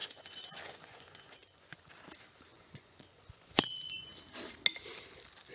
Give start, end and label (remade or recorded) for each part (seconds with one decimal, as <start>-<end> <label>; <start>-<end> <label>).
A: 0.0-1.9 remade; 1.9-2.5 recorded; 2.5-4.1 remade; 4.1-5.5 recorded